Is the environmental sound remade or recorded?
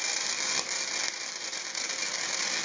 recorded